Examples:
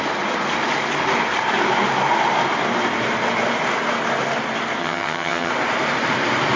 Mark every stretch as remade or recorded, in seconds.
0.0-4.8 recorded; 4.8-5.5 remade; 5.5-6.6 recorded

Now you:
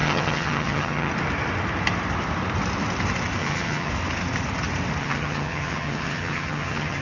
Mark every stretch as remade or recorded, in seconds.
0.0-1.1 remade; 1.1-3.4 recorded; 3.4-3.9 remade; 3.9-5.0 recorded; 5.0-7.0 remade

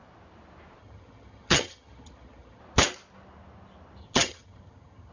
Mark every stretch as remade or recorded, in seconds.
0.0-0.8 recorded; 0.8-2.6 remade; 2.6-4.0 recorded; 4.0-5.1 remade